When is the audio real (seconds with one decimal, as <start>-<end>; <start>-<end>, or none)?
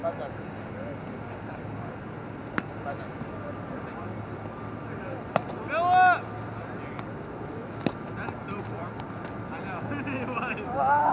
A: 0.0-11.1